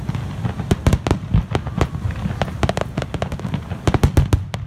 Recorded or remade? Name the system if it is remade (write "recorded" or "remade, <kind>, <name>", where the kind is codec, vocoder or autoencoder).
recorded